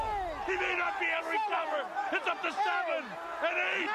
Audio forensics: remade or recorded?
recorded